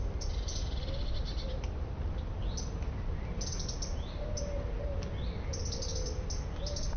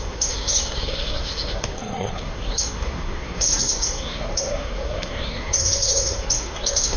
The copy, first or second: second